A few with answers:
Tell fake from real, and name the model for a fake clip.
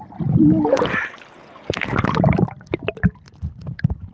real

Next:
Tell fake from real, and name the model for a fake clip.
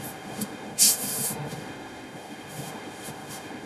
fake, autoencoder, DAC-VAE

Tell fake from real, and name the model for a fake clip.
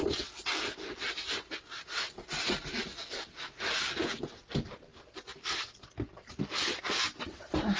real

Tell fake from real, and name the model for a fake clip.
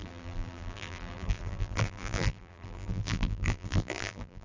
fake, vocoder, BigVGAN v2